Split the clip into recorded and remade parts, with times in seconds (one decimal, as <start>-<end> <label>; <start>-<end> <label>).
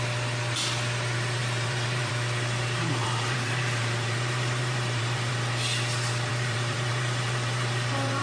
0.0-1.4 recorded; 1.4-2.1 remade; 2.1-3.0 recorded; 3.0-5.3 remade; 5.3-6.3 recorded; 6.3-8.2 remade